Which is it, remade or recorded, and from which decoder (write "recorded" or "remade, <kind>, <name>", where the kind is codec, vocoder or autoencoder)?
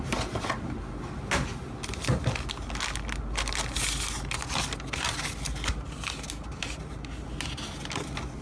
recorded